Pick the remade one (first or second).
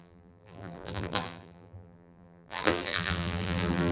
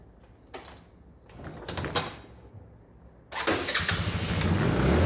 first